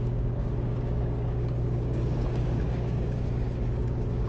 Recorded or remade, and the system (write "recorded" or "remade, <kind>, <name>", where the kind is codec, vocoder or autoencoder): remade, codec, DAC